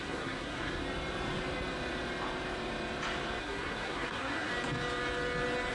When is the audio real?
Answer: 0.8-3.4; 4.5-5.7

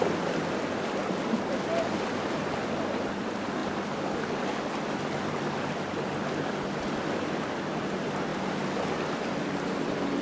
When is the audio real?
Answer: 0.0-10.2

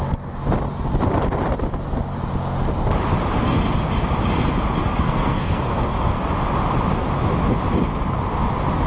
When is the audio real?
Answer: 0.0-4.8; 6.2-8.9

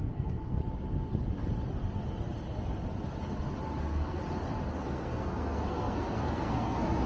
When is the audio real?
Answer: 0.6-3.8; 4.2-4.8